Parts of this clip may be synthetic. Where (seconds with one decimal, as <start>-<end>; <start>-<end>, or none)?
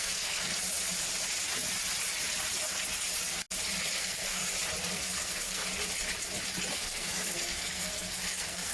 0.0-0.5; 4.0-4.4; 4.9-5.6; 6.7-8.7